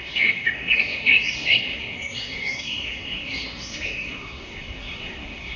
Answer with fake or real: fake